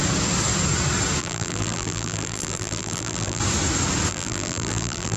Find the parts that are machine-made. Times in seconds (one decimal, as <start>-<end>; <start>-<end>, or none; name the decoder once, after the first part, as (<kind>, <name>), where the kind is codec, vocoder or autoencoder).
1.2-3.4 (vocoder, BigVGAN v2); 4.1-5.2